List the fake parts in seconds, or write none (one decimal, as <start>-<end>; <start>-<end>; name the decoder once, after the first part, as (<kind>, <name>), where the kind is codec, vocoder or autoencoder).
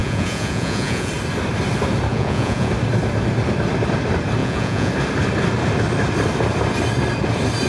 0.0-1.1 (vocoder, Vocos); 2.1-2.7; 4.4-4.9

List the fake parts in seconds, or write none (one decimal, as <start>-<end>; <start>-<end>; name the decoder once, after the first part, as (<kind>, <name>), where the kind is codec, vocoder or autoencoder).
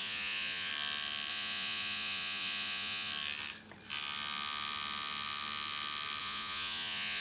0.0-0.7 (vocoder, Vocos); 1.3-3.1; 6.2-7.2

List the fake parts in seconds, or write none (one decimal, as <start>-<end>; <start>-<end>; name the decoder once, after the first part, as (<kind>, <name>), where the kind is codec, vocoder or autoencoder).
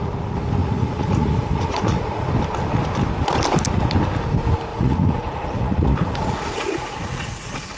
0.6-2.3 (vocoder, Vocos); 4.7-7.8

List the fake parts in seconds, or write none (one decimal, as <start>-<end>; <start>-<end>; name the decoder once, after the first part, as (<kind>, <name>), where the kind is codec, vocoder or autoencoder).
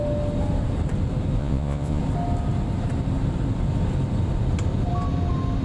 1.4-2.0 (vocoder, Vocos)